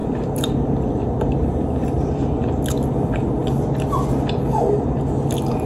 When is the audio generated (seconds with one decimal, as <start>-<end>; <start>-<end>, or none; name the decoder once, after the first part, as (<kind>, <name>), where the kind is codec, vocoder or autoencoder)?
0.0-2.6 (vocoder, BigVGAN v2)